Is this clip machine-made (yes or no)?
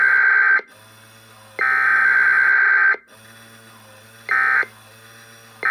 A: no